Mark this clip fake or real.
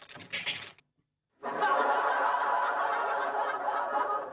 real